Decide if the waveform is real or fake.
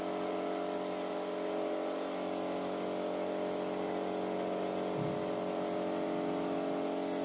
real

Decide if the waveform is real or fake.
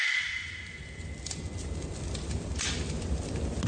real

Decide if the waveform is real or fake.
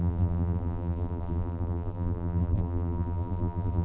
fake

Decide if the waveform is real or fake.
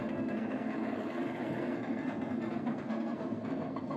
fake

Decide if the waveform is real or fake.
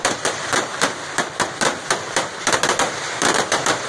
fake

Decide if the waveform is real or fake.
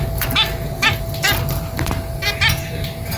real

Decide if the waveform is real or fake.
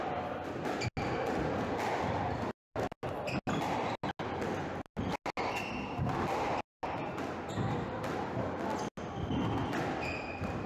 real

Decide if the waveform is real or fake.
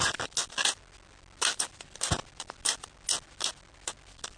real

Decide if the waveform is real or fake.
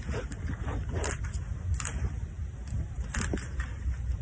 real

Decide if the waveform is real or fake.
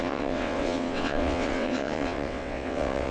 fake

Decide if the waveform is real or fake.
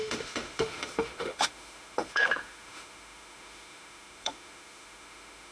fake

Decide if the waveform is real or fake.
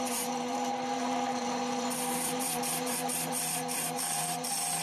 fake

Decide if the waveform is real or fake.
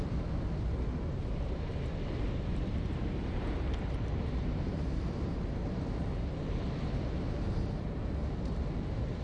fake